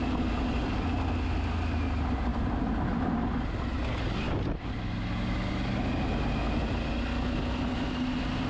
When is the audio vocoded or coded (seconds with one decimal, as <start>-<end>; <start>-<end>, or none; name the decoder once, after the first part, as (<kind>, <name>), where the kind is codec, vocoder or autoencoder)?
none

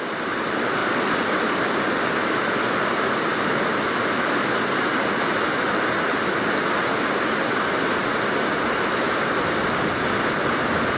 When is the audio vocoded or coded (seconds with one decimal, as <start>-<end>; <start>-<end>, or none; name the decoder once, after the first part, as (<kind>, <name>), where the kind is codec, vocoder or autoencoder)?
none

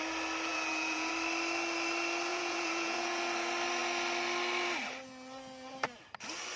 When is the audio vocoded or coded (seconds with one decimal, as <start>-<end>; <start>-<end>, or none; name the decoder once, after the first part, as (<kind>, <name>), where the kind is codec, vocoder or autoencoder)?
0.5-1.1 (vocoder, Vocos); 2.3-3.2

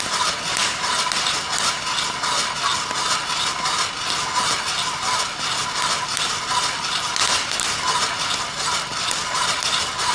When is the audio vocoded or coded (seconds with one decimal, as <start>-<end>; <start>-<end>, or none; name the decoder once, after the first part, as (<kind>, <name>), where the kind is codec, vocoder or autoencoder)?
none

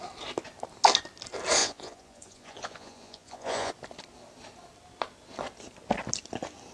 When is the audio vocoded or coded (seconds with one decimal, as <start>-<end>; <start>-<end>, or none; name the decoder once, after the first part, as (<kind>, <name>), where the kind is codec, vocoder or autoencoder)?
1.6-3.7 (vocoder, Vocos)

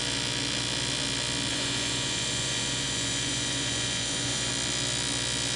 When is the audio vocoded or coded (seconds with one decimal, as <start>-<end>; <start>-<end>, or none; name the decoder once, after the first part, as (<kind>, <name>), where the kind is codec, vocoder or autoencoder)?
1.5-4.5 (vocoder, Vocos)

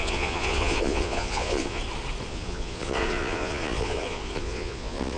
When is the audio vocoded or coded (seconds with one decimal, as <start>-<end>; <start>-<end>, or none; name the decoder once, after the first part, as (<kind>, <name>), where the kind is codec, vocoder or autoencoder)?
0.0-1.8 (vocoder, Vocos); 2.3-5.2